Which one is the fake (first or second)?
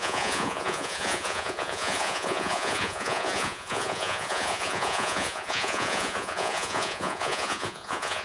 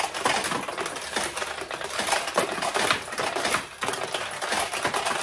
first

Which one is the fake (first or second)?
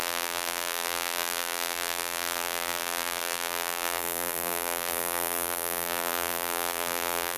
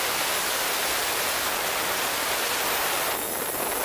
first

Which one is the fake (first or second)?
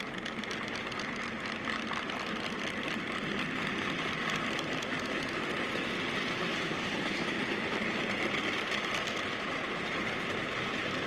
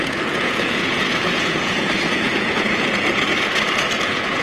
second